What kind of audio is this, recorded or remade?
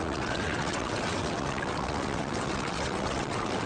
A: remade